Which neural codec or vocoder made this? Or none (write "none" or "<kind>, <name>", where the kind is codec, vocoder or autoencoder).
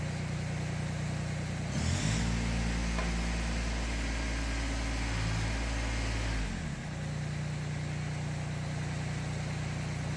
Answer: none